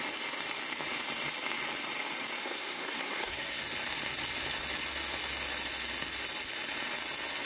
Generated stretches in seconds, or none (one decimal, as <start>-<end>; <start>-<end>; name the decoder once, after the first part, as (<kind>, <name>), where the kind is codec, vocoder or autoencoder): 2.4-3.6 (codec, SNAC)